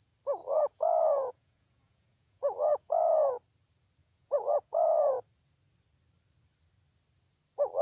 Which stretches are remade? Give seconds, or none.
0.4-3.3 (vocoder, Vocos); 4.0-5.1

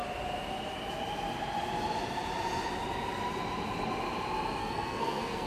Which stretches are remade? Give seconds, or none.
4.6-5.5 (codec, SNAC)

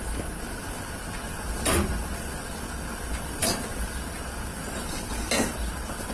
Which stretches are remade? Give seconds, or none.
none

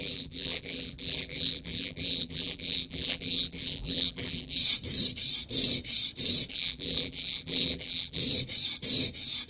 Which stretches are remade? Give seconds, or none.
0.0-4.6 (vocoder, BigVGAN v2); 6.5-8.2

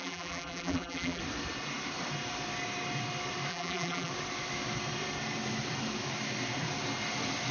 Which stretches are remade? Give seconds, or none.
0.0-1.2 (vocoder, BigVGAN v2); 3.5-4.1

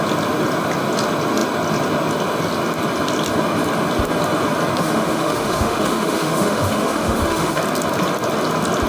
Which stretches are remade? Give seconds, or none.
4.8-7.6 (autoencoder, DAC-VAE)

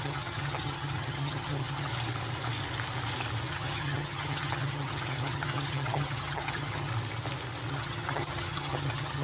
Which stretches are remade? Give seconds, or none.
0.0-1.9 (vocoder, HiFi-GAN); 3.5-6.9; 7.7-9.2